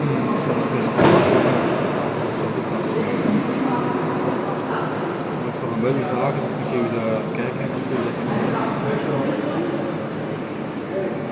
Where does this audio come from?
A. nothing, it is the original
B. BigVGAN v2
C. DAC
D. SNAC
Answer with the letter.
A